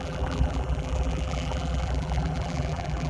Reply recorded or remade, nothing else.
remade